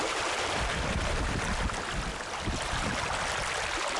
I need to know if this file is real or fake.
real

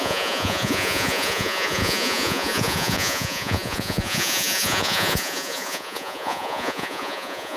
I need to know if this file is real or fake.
fake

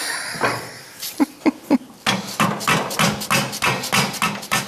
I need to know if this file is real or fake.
real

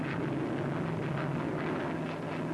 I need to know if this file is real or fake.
real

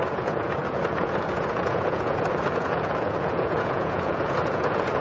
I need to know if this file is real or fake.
fake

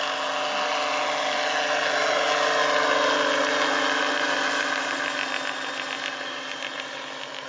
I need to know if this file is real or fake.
real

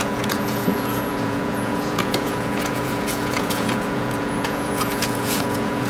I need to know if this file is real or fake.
fake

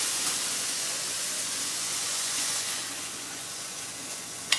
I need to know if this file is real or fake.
fake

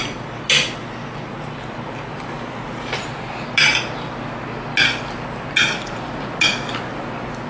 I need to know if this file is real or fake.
real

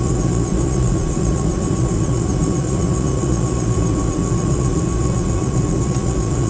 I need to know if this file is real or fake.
fake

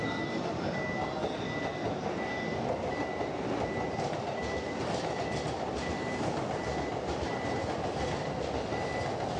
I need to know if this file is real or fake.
real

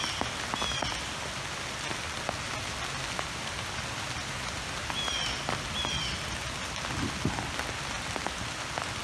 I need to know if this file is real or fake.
real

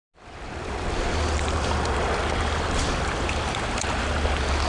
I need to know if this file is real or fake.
real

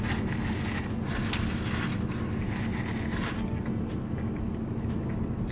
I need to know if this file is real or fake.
real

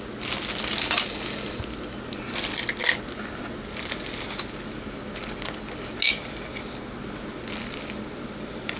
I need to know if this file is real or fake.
real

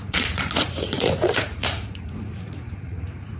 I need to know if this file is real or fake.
fake